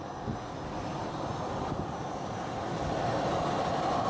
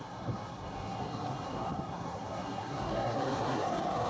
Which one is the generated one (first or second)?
second